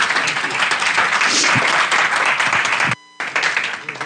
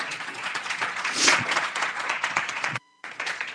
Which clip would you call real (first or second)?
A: first